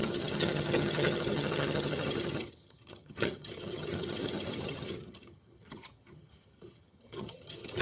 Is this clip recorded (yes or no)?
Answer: no